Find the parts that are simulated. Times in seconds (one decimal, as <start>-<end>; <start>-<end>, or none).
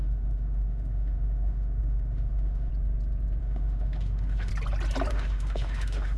0.0-2.7; 3.4-4.5; 5.1-6.2